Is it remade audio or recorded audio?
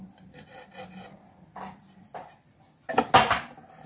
recorded